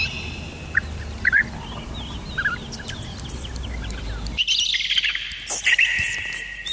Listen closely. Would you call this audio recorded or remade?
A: recorded